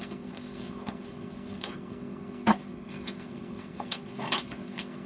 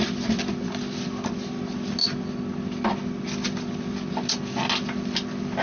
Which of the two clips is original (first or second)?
second